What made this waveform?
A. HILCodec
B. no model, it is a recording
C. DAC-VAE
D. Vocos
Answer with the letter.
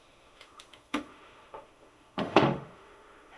C